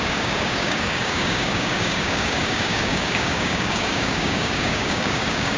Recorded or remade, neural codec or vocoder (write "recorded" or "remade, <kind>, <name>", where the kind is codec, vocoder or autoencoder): remade, codec, DAC